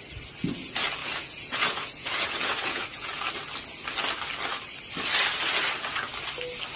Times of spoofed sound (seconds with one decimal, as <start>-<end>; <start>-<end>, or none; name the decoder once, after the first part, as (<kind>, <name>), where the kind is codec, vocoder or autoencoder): 1.0-3.2 (vocoder, Vocos)